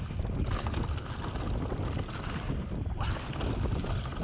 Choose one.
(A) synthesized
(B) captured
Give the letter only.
B